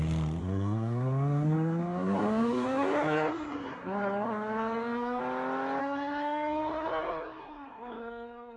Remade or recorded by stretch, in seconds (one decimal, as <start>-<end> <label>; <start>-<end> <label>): 0.0-0.4 recorded; 0.4-5.2 remade; 5.2-5.8 recorded; 5.8-8.6 remade